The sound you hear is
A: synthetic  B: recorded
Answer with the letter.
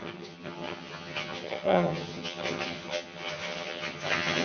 A